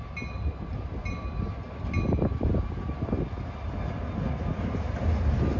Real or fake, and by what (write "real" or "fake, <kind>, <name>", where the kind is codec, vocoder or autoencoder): real